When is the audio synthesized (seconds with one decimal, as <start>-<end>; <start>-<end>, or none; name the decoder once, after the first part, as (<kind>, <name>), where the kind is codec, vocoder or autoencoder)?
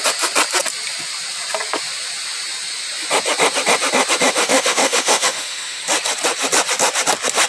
4.4-5.8 (autoencoder, DAC-VAE)